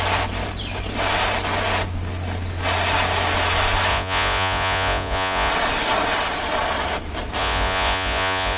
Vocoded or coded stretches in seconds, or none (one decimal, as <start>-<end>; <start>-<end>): 3.9-5.5; 7.4-8.6